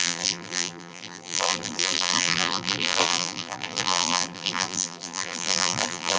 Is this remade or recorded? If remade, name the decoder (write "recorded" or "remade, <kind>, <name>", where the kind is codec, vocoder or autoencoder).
remade, vocoder, BigVGAN v2